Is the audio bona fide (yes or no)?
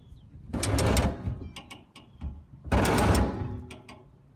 yes